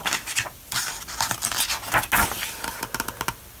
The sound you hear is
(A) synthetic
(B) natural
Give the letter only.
B